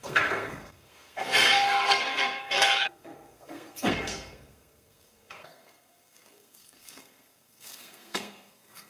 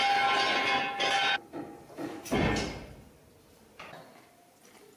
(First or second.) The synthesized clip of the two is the first